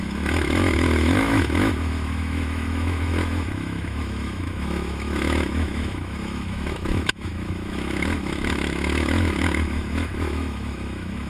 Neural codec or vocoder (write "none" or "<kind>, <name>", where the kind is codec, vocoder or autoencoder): autoencoder, DAC-VAE